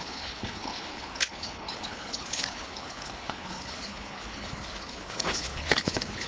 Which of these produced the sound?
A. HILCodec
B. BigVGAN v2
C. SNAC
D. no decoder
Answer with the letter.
A